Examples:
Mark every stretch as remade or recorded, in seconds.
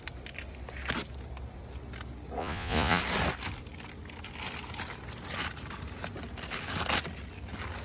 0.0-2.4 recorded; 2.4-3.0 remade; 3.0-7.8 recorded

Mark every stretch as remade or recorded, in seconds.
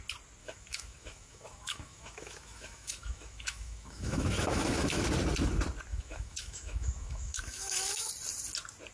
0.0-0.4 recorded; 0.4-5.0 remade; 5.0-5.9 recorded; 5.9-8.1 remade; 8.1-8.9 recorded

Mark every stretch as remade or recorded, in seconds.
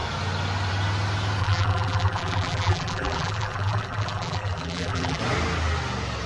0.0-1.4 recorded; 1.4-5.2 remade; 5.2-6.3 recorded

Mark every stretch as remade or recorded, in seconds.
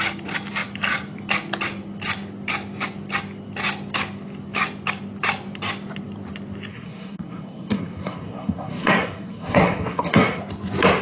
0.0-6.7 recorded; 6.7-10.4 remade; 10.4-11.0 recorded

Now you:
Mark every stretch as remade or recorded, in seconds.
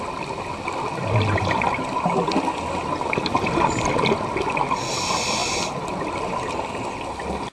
0.0-7.5 recorded